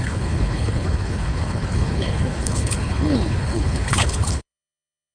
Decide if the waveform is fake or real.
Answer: fake